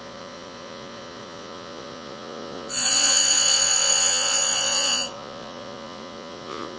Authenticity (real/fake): fake